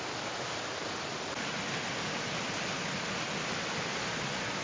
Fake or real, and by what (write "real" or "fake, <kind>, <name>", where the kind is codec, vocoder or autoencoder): real